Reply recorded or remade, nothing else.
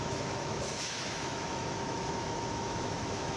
remade